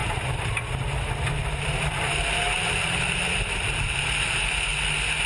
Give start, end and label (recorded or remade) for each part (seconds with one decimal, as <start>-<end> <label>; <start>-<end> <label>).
0.0-4.7 remade; 4.7-5.3 recorded